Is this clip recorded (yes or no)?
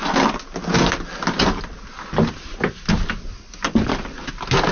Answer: yes